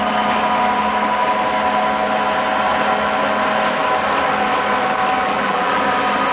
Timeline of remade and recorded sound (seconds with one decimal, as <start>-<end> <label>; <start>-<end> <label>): 0.0-5.2 recorded; 5.2-5.8 remade; 5.8-6.3 recorded